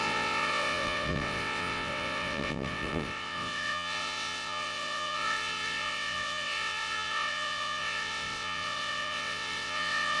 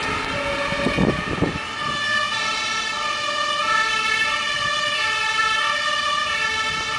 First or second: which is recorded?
second